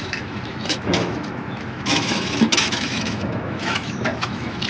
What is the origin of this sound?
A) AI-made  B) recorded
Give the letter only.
A